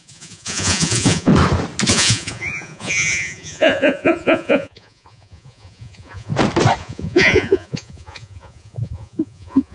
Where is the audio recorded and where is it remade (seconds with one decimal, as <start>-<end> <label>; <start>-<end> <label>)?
0.0-1.3 remade; 1.3-1.9 recorded; 1.9-6.3 remade; 6.3-6.8 recorded; 6.8-9.7 remade